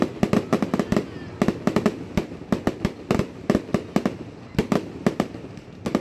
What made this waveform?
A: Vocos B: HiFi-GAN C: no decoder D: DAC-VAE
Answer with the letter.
C